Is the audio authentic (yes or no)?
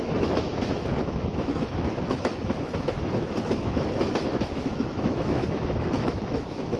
no